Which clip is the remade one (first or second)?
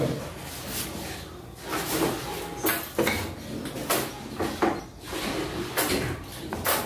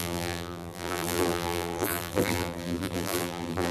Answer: second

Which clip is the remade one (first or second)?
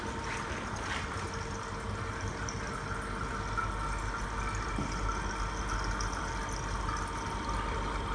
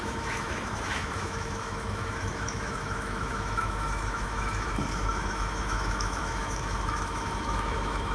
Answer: second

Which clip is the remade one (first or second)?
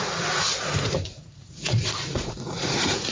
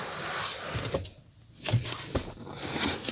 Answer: first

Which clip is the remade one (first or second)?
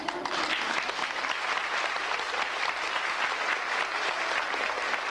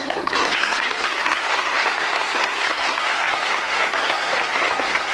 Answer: second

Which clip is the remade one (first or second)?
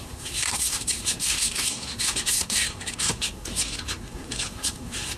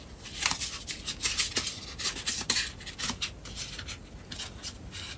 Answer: first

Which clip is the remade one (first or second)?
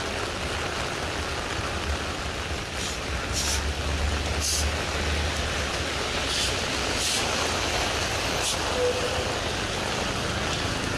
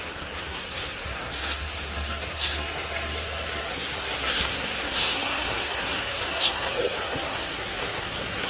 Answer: second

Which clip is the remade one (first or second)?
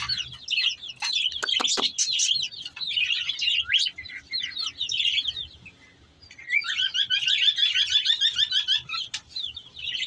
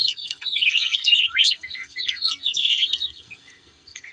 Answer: second